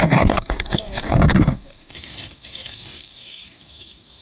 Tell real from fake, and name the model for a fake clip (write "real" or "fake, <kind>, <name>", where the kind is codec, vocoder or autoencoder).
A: fake, codec, DAC